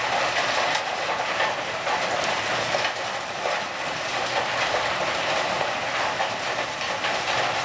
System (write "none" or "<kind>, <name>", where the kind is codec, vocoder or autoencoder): none